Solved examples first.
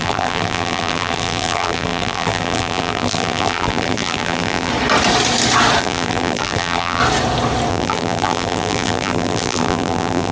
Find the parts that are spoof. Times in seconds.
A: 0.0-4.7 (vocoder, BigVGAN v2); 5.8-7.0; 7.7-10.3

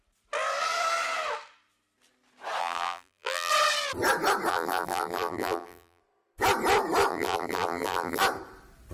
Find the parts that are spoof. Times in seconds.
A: 2.6-3.5 (vocoder, BigVGAN v2); 4.5-6.0; 7.1-8.2

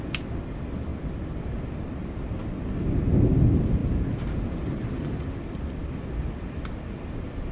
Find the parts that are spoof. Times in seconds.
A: 0.9-1.6 (vocoder, BigVGAN v2); 3.8-5.9

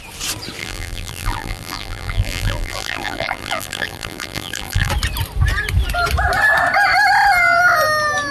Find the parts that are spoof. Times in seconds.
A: 0.6-4.9 (vocoder, BigVGAN v2)

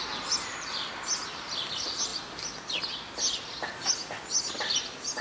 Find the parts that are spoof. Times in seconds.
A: 0.0-1.2 (vocoder, BigVGAN v2); 1.7-2.1; 4.5-5.2

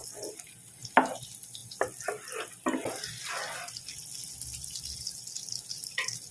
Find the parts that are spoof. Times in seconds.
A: none

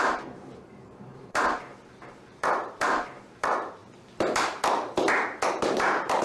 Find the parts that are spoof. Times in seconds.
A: 0.0-3.8 (vocoder, BigVGAN v2); 5.5-6.2

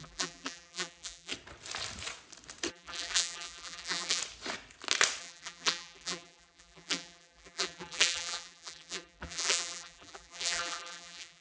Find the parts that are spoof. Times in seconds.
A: 0.0-1.3 (vocoder, BigVGAN v2); 2.7-4.2; 5.2-11.4